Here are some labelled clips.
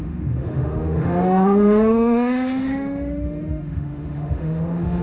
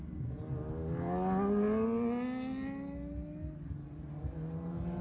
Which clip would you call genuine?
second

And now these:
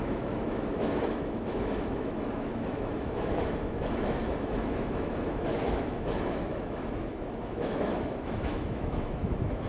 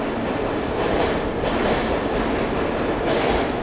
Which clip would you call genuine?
second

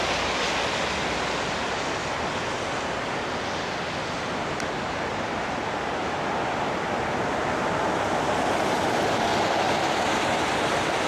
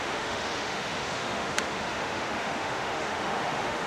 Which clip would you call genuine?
first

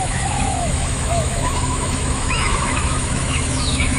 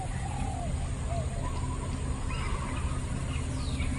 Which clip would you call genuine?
second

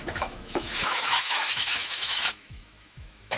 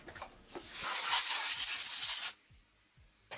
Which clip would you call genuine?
second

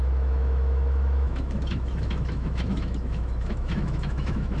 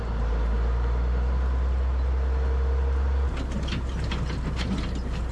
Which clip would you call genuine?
second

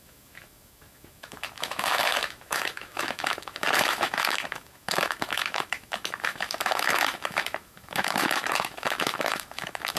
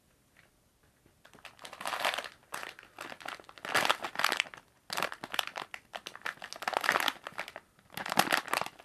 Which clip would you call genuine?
second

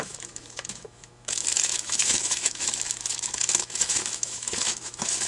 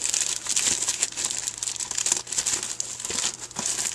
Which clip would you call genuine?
second